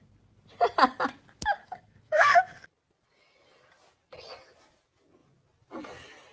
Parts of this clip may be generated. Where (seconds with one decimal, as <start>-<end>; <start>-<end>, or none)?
1.6-2.7

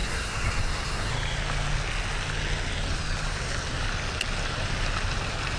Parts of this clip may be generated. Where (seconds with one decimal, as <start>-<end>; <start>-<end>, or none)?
0.0-1.1

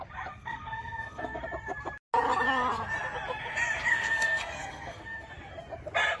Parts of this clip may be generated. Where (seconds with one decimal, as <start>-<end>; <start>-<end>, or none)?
0.4-1.4; 3.9-5.3

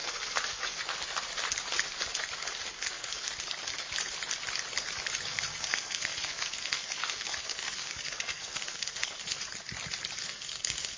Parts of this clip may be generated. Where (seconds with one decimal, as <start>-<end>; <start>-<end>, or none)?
0.0-0.8; 2.8-3.3; 5.3-9.4; 10.2-11.0

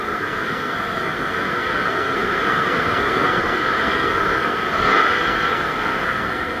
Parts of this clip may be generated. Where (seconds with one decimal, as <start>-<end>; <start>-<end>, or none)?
0.0-6.6

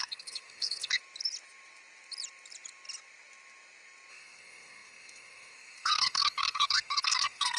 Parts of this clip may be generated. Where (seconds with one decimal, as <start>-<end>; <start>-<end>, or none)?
0.0-1.0; 4.1-7.6

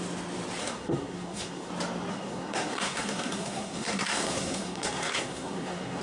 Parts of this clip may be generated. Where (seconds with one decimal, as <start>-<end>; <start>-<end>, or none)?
0.6-1.7; 2.1-6.0